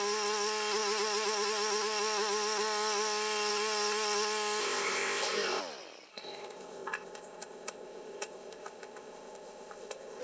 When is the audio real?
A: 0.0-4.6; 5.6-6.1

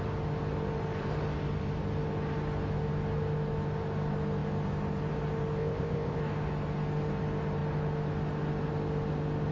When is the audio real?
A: 0.0-5.6; 6.2-9.5

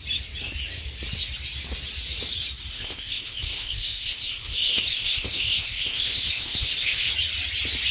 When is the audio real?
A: 0.0-2.7; 7.1-7.9

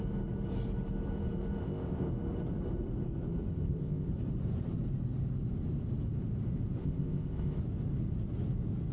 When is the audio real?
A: 0.0-1.6; 2.1-3.5; 4.1-6.8; 7.6-8.9

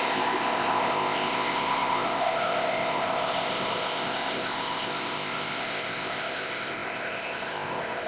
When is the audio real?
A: none

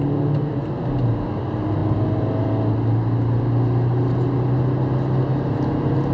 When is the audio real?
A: 0.0-6.1